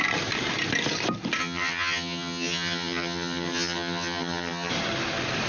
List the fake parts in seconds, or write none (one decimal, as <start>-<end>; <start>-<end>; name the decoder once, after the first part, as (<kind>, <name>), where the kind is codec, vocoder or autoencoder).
1.4-4.7 (vocoder, HiFi-GAN)